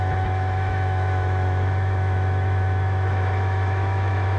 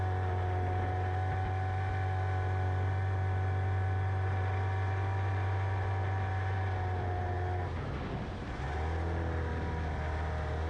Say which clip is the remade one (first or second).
first